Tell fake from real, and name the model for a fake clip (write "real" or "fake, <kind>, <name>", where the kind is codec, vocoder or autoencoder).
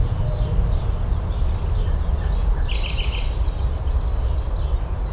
real